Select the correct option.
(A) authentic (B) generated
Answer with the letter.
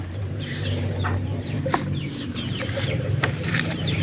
B